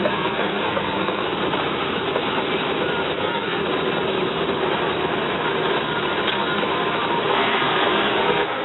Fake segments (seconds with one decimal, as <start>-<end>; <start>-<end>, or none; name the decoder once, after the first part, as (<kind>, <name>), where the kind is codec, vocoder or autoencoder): 0.0-1.2 (codec, SNAC); 3.1-3.6; 7.3-8.6